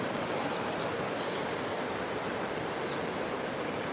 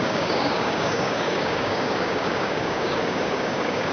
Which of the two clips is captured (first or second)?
first